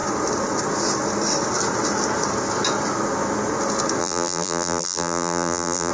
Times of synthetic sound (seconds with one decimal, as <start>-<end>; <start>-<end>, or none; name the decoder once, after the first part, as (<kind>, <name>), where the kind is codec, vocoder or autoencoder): 4.0-5.9 (vocoder, BigVGAN v2)